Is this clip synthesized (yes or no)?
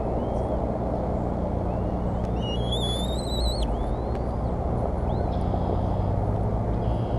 no